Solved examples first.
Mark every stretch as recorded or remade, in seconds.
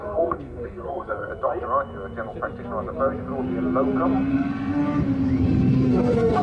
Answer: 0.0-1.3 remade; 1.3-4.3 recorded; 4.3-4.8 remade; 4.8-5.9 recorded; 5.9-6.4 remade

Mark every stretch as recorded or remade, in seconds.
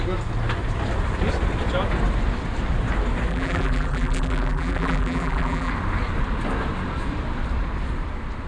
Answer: 0.0-3.3 recorded; 3.3-5.7 remade; 5.7-8.5 recorded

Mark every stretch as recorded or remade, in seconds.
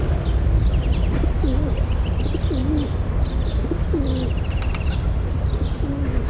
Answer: 0.0-6.3 recorded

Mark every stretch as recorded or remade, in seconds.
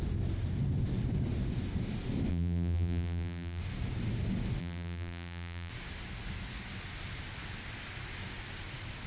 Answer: 0.0-2.3 recorded; 2.3-3.6 remade; 3.6-4.6 recorded; 4.6-5.7 remade; 5.7-9.1 recorded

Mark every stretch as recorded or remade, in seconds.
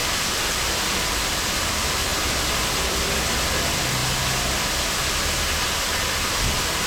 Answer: 0.0-4.0 remade; 4.0-6.5 recorded; 6.5-6.9 remade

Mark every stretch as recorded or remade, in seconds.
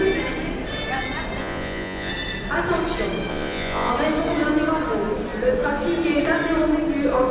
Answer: 0.0-1.4 recorded; 1.4-2.1 remade; 2.1-3.3 recorded; 3.3-3.9 remade; 3.9-7.3 recorded